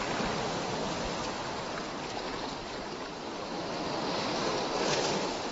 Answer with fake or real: real